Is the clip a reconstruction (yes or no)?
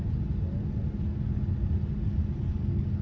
no